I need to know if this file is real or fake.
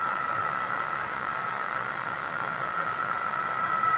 fake